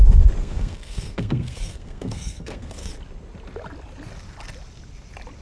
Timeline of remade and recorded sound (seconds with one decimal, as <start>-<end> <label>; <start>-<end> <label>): 0.0-0.4 recorded; 0.4-2.9 remade; 2.9-5.4 recorded